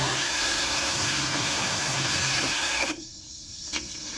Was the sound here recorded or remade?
remade